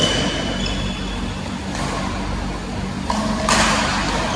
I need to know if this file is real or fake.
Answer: real